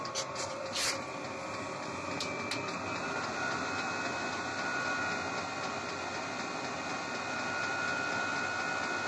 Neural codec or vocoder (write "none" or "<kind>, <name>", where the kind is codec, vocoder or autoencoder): none